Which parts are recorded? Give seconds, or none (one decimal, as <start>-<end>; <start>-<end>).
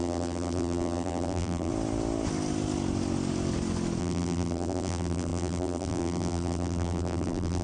1.7-4.0